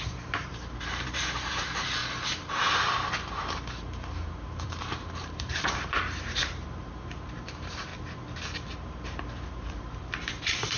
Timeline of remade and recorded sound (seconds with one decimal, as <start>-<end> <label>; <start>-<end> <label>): 0.0-2.0 remade; 2.0-3.2 recorded; 3.2-7.9 remade; 7.9-8.7 recorded; 8.7-10.8 remade